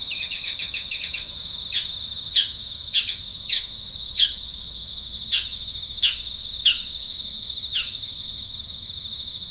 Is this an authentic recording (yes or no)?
no